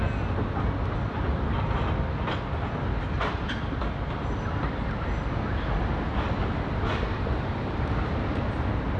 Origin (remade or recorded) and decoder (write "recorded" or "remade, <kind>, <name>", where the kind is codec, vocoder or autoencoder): recorded